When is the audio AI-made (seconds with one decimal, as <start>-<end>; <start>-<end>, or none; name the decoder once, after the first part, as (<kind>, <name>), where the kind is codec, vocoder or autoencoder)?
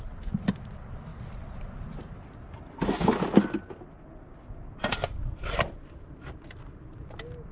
none